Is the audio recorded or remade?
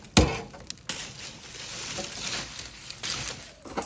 recorded